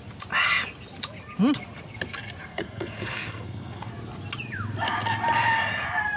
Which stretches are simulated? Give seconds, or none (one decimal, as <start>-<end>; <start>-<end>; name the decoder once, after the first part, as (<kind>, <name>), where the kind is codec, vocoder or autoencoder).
2.5-3.9 (codec, SNAC)